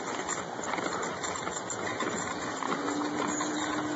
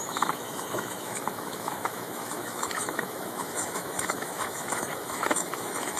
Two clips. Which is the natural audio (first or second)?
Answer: first